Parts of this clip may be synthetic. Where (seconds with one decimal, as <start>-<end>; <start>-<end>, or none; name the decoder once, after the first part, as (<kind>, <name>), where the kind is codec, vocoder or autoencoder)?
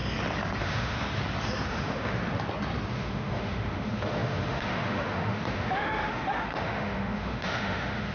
0.6-1.0 (autoencoder, DAC-VAE); 1.7-2.2; 2.9-8.1